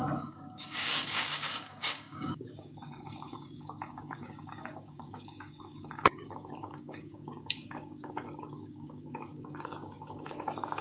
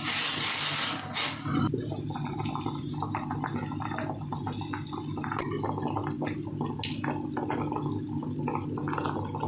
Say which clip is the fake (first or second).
first